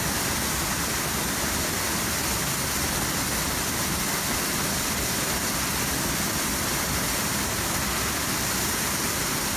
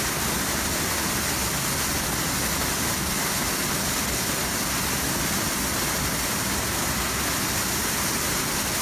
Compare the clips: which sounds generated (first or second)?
first